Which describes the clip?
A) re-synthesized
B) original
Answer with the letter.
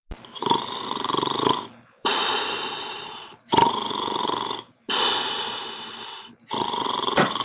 A